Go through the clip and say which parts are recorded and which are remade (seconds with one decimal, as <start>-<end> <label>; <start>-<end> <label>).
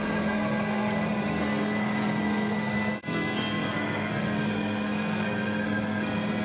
0.0-6.4 remade